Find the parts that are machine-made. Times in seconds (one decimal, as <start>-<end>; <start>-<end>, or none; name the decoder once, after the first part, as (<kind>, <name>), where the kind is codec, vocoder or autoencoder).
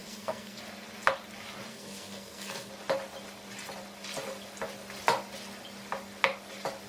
0.0-0.6 (codec, SNAC); 1.7-2.7